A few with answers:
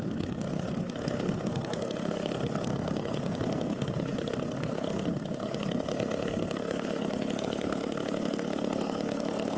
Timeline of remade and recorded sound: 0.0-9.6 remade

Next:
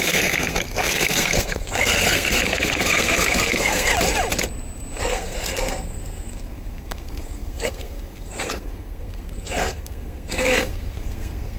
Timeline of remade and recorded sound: 0.0-3.9 remade; 3.9-5.0 recorded; 5.0-11.6 remade

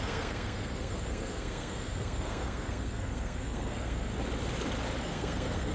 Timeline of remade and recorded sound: 0.0-4.1 remade; 4.1-5.0 recorded; 5.0-5.7 remade

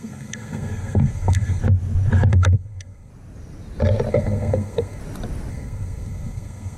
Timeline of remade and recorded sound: 0.0-1.6 remade; 1.6-2.3 recorded; 2.3-3.1 remade; 3.1-4.1 recorded; 4.1-5.0 remade; 5.0-5.5 recorded; 5.5-6.8 remade

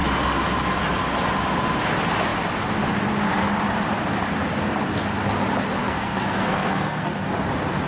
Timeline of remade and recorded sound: 0.0-5.8 recorded; 5.8-7.3 remade; 7.3-7.9 recorded

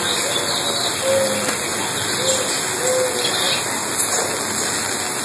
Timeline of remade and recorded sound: 0.0-5.2 recorded

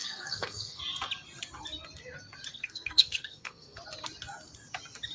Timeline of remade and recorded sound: 0.0-0.8 remade; 0.8-2.5 recorded; 2.5-3.8 remade; 3.8-5.1 recorded